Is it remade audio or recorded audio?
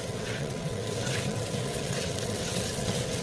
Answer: remade